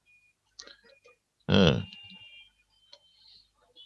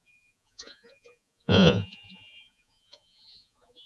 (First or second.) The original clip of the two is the first